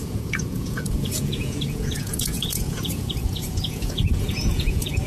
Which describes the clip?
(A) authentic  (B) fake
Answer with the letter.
B